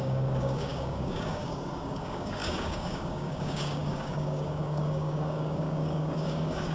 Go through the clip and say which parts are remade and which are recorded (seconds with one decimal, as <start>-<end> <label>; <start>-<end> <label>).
0.0-6.7 remade